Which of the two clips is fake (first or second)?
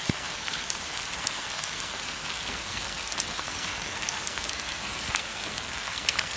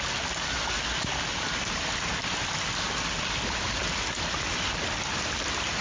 first